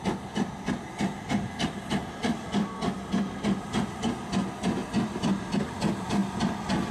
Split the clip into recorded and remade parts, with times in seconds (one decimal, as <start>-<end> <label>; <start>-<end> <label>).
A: 0.0-2.0 recorded; 2.0-2.7 remade; 2.7-6.9 recorded